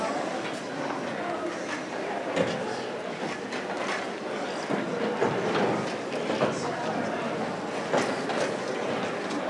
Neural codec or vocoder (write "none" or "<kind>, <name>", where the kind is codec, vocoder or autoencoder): none